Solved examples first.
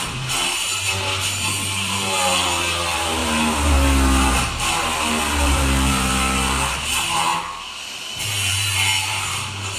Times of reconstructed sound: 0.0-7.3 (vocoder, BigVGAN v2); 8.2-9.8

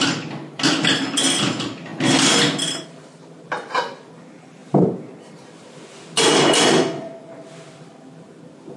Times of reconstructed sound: none

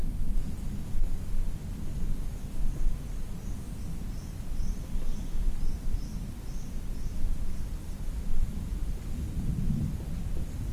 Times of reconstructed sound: 4.1-6.1 (vocoder, BigVGAN v2); 7.8-10.7